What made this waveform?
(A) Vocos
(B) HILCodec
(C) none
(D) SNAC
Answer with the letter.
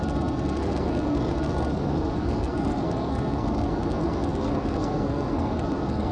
D